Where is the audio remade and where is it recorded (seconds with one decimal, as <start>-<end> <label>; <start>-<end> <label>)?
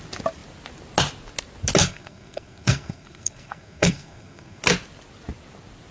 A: 0.0-1.8 recorded; 1.8-4.6 remade; 4.6-5.9 recorded